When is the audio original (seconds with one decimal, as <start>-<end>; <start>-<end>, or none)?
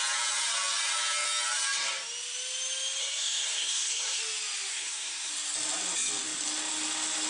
0.0-3.0; 4.2-4.7; 5.3-7.3